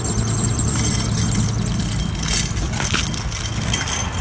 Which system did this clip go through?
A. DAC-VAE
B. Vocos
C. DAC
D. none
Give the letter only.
D